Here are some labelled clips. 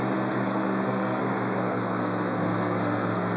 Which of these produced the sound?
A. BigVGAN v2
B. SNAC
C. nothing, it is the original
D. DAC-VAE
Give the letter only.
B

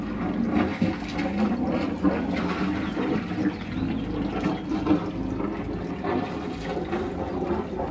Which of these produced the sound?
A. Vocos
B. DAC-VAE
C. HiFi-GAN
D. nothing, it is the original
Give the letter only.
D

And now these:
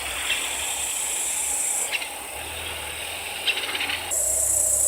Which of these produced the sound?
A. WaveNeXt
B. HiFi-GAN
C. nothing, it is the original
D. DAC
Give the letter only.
C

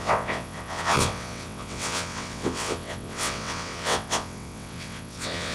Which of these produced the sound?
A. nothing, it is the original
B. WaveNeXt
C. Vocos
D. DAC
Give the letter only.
B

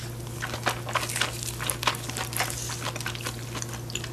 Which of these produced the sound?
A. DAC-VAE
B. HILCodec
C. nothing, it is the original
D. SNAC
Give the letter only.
C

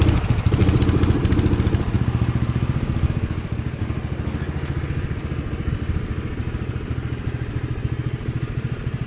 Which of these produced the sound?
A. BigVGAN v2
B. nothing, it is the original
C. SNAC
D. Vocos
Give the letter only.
B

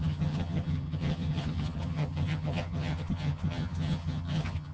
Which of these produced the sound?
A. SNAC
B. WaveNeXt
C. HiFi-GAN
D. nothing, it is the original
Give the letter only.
C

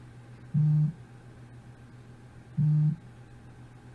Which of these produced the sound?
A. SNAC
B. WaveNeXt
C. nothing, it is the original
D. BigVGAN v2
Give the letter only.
C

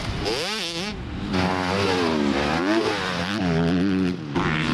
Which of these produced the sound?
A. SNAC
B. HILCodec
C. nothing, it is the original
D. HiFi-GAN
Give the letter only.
C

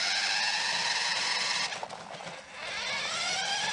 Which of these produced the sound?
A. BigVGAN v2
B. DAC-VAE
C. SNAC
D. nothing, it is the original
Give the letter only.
D